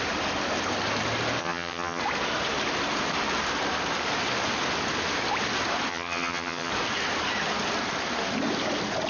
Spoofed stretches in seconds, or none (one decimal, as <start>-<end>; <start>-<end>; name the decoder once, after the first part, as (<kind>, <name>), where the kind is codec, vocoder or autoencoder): 1.4-2.0 (vocoder, HiFi-GAN); 5.9-6.7